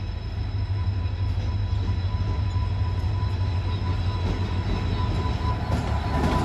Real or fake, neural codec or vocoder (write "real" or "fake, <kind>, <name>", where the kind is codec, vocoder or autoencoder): real